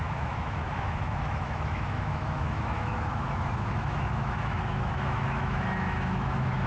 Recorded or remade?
remade